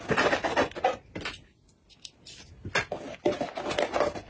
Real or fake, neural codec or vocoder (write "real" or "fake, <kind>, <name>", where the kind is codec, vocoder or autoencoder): real